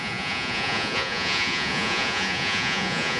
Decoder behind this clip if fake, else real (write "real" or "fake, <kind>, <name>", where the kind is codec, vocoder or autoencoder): fake, vocoder, Vocos